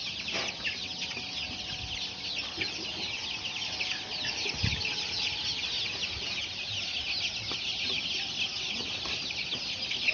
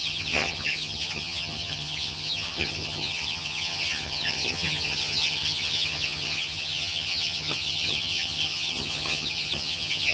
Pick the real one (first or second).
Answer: first